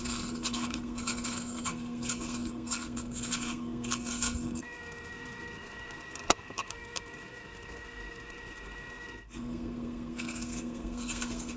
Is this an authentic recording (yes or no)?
no